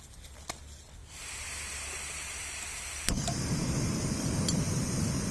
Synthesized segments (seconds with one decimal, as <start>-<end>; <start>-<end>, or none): none